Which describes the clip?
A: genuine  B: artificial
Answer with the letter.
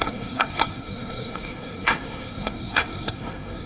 B